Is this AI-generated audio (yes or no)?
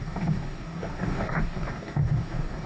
yes